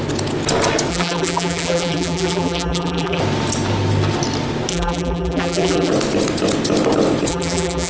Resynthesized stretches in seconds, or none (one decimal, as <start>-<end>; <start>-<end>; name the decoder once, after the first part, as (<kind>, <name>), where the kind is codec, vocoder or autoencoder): 0.9-3.2 (vocoder, BigVGAN v2); 4.7-5.9; 7.3-7.9